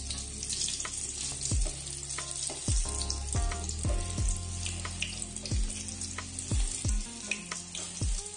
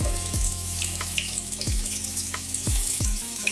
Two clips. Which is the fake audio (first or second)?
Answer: second